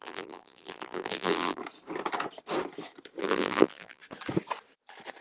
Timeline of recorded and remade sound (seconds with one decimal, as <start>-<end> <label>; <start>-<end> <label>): 0.0-1.6 remade; 1.6-3.2 recorded; 3.2-4.0 remade; 4.0-5.2 recorded